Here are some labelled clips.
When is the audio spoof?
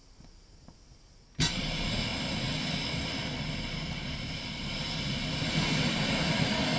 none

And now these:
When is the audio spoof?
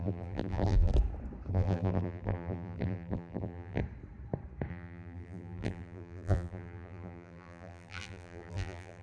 0.0-0.9; 1.5-3.8; 4.7-9.0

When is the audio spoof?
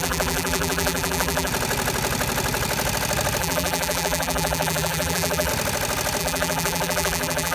0.0-1.5; 3.4-5.5; 6.2-7.5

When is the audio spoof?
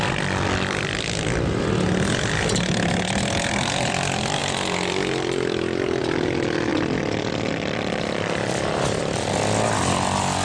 6.7-9.0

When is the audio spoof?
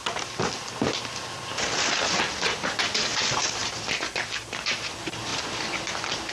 none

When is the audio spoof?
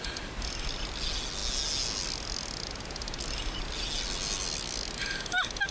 none